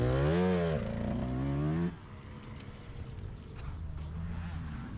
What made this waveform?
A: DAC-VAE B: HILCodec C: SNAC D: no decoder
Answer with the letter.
D